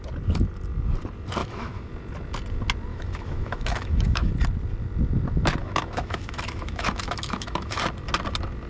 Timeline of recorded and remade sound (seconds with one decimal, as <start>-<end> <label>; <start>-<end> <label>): 0.0-1.4 recorded; 1.4-1.9 remade; 1.9-2.9 recorded; 2.9-4.3 remade; 4.3-5.6 recorded; 5.6-7.8 remade; 7.8-8.7 recorded